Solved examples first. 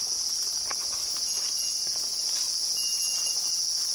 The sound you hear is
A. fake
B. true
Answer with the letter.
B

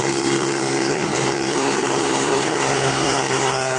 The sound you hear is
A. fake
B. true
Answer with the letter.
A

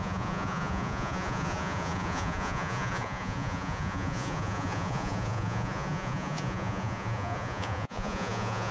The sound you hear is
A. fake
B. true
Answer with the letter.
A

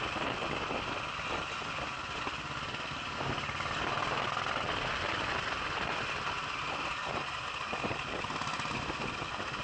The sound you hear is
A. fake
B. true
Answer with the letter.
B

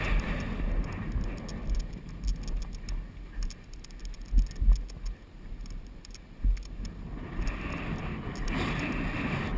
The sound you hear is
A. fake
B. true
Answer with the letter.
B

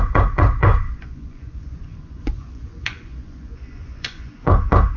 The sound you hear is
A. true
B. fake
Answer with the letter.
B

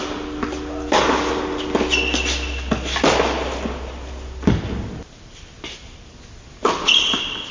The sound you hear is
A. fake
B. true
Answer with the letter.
B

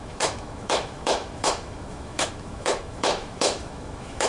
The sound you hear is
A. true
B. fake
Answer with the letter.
B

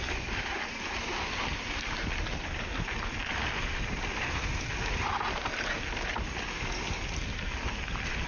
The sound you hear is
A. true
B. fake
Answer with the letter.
A